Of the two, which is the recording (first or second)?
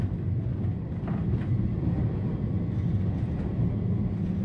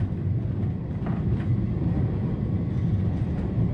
first